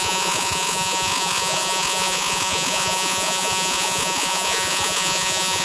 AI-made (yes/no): yes